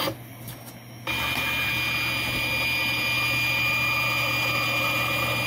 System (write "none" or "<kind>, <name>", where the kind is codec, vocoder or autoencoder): none